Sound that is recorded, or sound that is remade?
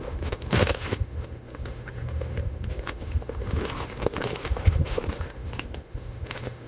remade